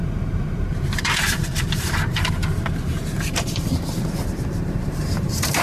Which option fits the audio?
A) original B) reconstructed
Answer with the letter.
B